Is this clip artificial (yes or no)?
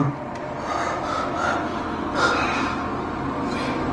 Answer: no